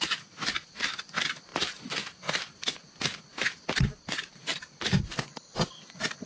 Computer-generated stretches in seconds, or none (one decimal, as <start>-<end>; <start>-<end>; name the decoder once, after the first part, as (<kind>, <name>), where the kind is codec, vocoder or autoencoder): none